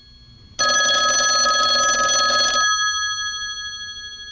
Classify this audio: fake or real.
real